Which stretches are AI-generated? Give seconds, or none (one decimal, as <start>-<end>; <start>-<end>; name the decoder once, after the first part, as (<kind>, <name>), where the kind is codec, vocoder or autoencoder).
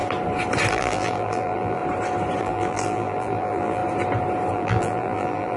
0.7-1.8 (vocoder, BigVGAN v2); 2.4-3.8; 4.5-5.6